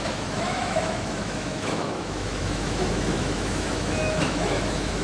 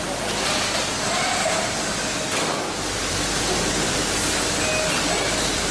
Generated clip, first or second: first